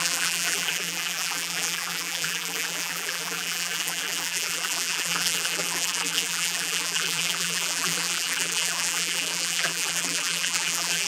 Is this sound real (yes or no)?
no